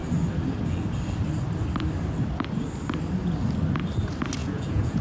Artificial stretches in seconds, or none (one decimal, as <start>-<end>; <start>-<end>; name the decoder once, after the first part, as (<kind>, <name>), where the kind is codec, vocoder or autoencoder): 4.4-5.0 (vocoder, Vocos)